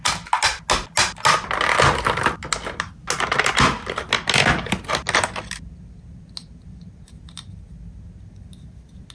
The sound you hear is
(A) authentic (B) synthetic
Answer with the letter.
A